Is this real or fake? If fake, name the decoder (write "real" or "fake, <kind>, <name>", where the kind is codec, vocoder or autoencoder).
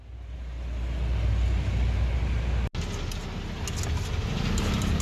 real